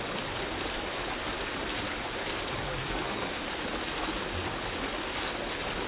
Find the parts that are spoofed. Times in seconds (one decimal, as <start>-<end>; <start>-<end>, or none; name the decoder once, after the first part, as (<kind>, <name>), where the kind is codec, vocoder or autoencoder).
2.8-3.4 (codec, SNAC)